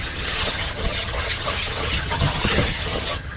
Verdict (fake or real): fake